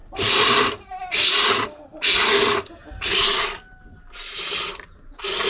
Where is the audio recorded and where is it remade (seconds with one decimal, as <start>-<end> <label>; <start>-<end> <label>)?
0.0-0.6 remade; 0.6-5.5 recorded